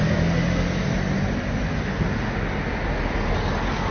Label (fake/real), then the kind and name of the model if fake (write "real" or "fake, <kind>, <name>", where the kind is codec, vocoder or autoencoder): real